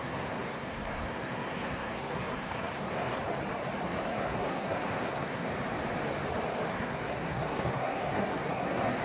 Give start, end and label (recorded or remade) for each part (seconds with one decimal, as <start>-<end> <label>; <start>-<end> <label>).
0.0-3.2 remade; 3.2-3.8 recorded; 3.8-5.5 remade; 5.5-6.7 recorded; 6.7-9.0 remade

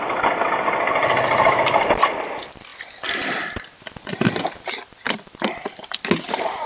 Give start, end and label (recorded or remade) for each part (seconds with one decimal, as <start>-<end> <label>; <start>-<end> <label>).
0.0-6.7 recorded